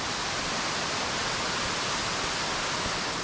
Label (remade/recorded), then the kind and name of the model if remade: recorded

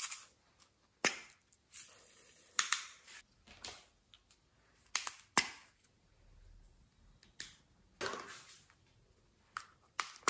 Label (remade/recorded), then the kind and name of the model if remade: recorded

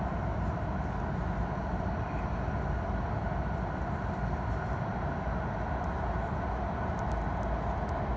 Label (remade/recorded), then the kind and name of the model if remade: recorded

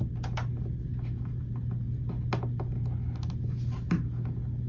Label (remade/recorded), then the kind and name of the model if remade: recorded